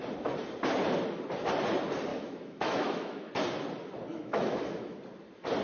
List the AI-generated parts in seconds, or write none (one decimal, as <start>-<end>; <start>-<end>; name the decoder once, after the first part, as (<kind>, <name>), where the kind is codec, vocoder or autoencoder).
2.1-3.3 (autoencoder, DAC-VAE); 4.1-5.0